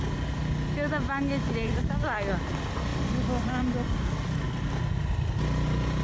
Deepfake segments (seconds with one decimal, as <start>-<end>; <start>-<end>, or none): none